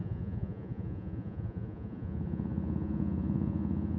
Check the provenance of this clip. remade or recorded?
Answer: remade